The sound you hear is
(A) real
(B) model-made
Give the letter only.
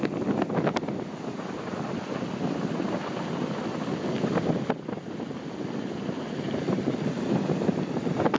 A